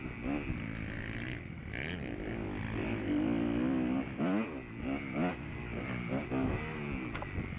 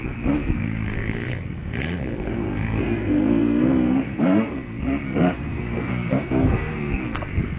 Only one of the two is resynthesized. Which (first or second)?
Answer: second